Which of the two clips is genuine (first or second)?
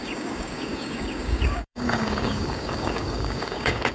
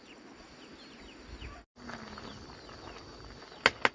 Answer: second